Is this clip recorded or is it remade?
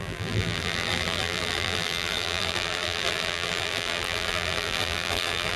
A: remade